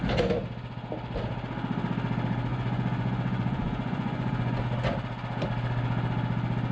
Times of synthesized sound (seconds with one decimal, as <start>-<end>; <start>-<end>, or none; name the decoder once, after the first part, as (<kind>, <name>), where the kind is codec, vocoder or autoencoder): 2.5-4.6 (vocoder, Vocos)